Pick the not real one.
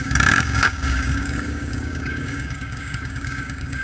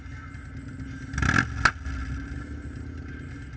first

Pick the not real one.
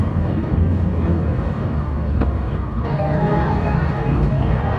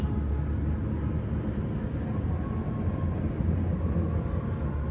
first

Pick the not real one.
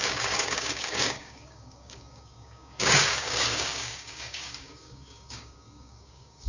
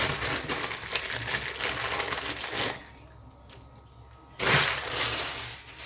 first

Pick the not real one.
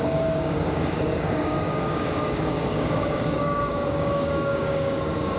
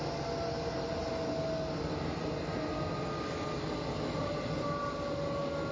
first